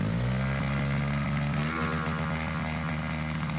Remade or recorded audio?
recorded